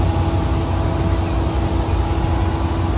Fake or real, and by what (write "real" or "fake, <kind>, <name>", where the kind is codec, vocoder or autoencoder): real